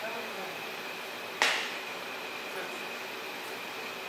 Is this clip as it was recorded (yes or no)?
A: yes